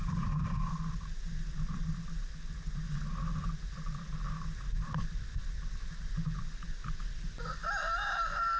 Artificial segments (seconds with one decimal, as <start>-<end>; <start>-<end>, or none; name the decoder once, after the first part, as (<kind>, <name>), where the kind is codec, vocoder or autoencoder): none